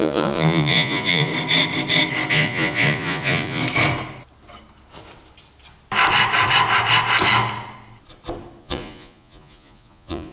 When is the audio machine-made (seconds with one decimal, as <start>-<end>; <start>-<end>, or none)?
0.0-1.3; 2.3-3.6; 8.6-10.3